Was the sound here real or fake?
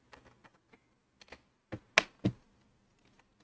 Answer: real